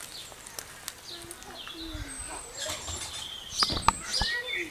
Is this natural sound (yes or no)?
yes